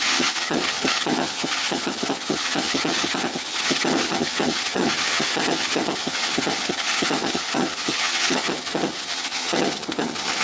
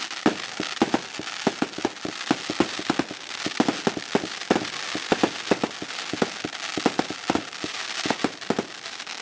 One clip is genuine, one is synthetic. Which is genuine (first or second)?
second